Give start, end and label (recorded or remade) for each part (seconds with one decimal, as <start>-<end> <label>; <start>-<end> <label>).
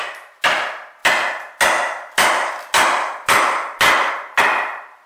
0.0-5.1 recorded